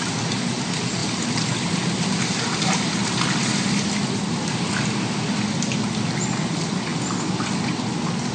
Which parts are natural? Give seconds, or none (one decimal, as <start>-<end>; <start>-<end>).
0.0-8.3